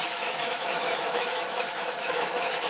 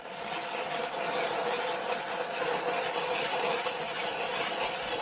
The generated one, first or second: first